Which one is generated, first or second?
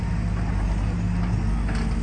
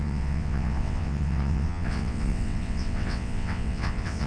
second